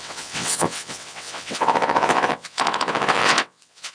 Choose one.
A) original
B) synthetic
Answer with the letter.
B